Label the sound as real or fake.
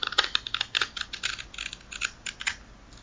real